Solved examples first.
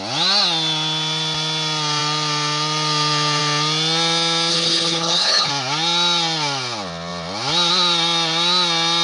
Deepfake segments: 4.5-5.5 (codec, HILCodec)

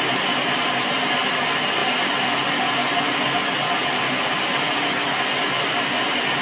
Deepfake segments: none

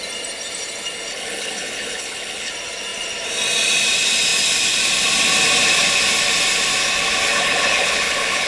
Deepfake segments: 1.1-2.5 (codec, HILCodec); 7.3-8.5